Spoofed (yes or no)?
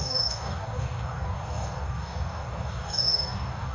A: yes